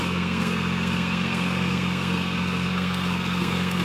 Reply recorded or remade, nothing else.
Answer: remade